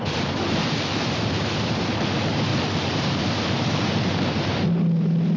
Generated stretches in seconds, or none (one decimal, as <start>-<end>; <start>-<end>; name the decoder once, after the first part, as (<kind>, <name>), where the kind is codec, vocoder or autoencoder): 0.6-1.3 (vocoder, BigVGAN v2); 2.5-4.8